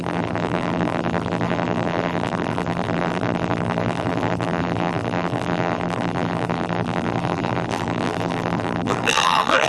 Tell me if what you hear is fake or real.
fake